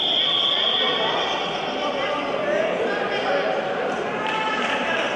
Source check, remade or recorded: recorded